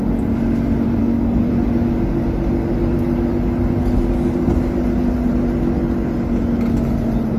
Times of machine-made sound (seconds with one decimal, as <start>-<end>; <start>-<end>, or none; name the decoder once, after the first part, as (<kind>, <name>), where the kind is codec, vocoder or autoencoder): 1.0-1.5 (codec, SNAC)